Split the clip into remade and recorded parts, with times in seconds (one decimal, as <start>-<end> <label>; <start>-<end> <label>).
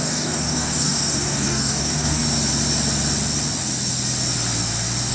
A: 0.0-2.2 remade; 2.2-5.1 recorded